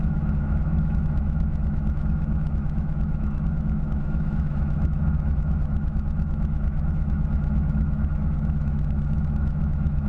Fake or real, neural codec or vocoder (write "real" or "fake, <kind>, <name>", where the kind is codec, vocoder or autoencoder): fake, autoencoder, DAC-VAE